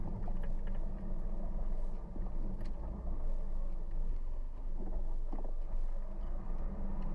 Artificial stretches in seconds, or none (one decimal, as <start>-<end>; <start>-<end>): 4.1-4.7